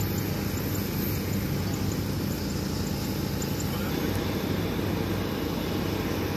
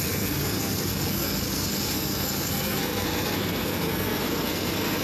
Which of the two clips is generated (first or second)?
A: second